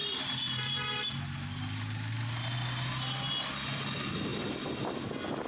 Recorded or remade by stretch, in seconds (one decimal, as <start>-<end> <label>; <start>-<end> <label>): 0.0-5.5 recorded